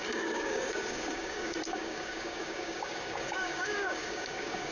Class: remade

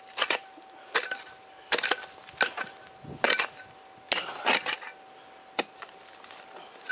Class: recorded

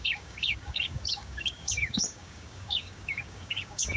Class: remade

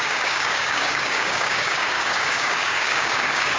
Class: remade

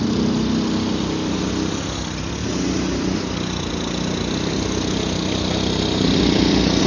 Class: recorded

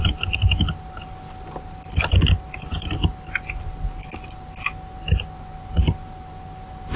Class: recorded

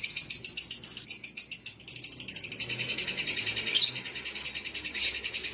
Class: recorded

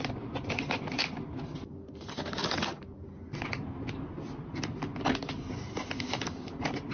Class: recorded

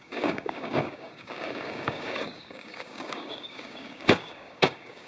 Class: remade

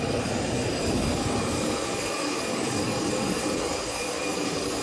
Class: remade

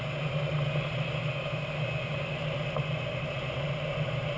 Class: recorded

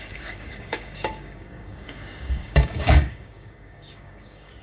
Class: remade